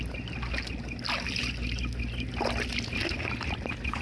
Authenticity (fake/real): real